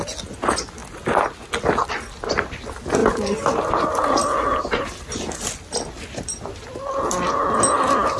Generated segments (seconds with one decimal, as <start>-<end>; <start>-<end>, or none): none